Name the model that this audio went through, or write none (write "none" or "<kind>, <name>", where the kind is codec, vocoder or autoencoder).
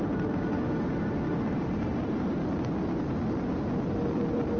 vocoder, BigVGAN v2